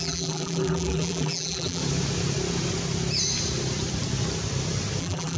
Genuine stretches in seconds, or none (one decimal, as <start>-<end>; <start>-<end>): 1.8-5.0